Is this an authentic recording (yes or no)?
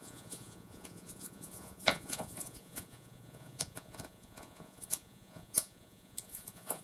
no